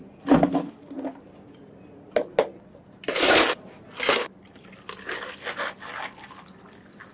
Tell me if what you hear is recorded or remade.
recorded